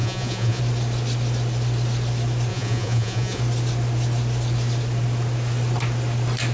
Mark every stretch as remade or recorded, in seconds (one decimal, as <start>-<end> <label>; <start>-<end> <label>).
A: 0.0-0.6 remade; 0.6-2.5 recorded; 2.5-3.4 remade; 3.4-6.5 recorded